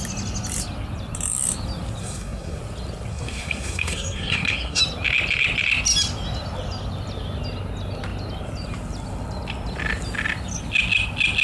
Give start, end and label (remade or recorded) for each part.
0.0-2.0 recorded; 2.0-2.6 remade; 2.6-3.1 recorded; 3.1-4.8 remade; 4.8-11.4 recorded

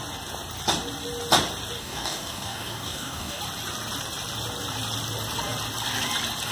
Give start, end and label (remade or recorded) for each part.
0.0-1.8 recorded; 1.8-3.4 remade; 3.4-6.5 recorded